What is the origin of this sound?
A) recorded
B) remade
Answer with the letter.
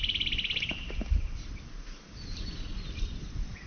A